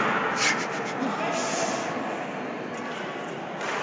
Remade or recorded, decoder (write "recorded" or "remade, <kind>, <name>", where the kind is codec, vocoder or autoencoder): recorded